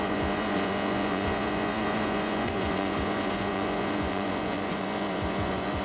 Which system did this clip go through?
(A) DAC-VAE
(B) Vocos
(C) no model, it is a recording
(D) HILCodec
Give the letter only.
B